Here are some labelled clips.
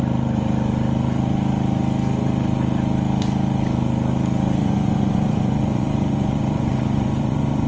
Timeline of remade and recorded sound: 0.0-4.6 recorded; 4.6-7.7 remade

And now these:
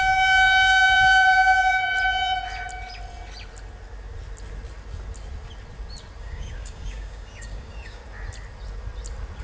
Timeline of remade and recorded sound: 0.0-1.8 remade; 1.8-6.2 recorded; 6.2-8.0 remade; 8.0-9.4 recorded

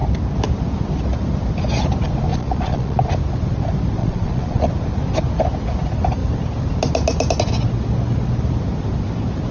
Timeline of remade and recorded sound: 0.0-2.3 recorded; 2.3-3.1 remade; 3.1-4.0 recorded; 4.0-4.7 remade; 4.7-9.5 recorded

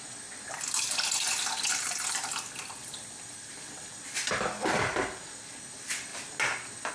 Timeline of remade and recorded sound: 0.0-2.8 recorded; 2.8-3.7 remade; 3.7-6.9 recorded

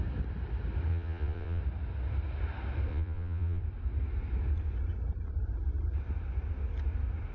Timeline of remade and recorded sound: 0.0-0.9 recorded; 0.9-1.6 remade; 1.6-2.9 recorded; 2.9-3.6 remade; 3.6-7.3 recorded

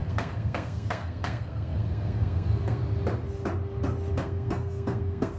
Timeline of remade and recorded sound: 0.0-2.8 remade; 2.8-4.1 recorded; 4.1-5.4 remade